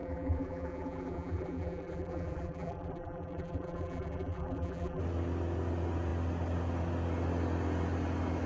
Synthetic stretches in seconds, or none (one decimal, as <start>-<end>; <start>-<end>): 0.0-5.0